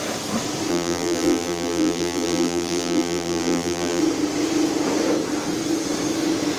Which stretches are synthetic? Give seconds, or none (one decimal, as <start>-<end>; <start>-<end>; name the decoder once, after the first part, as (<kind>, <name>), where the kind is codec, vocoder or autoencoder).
0.7-4.0 (vocoder, BigVGAN v2)